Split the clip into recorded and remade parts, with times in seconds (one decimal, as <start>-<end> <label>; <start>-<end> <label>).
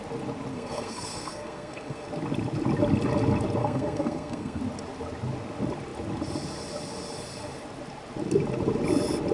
0.0-0.5 recorded; 0.5-2.1 remade; 2.1-3.6 recorded; 3.6-4.6 remade; 4.6-9.3 recorded